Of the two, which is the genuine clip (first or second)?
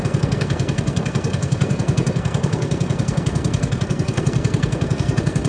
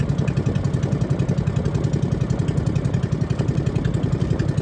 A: second